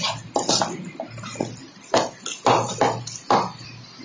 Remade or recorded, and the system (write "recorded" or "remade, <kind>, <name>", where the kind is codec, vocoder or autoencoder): recorded